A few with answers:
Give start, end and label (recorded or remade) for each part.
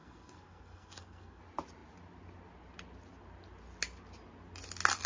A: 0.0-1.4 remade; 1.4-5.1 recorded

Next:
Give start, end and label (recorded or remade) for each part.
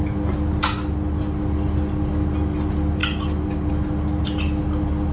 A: 0.0-5.1 recorded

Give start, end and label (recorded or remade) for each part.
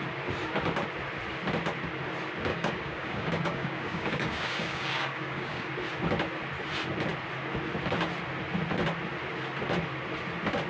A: 0.0-2.5 recorded; 2.5-5.7 remade; 5.7-10.7 recorded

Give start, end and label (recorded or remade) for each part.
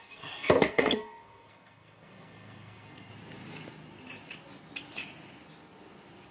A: 0.0-3.1 remade; 3.1-6.3 recorded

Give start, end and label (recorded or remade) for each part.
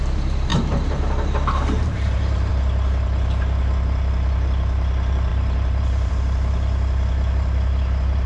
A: 0.0-0.5 recorded; 0.5-2.5 remade; 2.5-5.3 recorded; 5.3-6.1 remade; 6.1-8.3 recorded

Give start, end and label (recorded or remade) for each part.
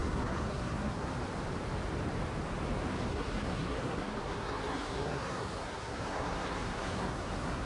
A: 0.0-1.1 remade; 1.1-3.1 recorded; 3.1-7.7 remade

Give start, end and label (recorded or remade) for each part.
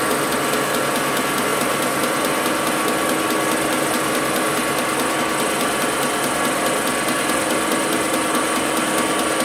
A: 0.0-9.4 recorded